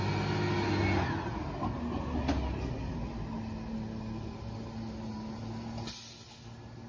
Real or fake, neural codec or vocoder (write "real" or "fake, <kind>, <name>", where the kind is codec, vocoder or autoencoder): real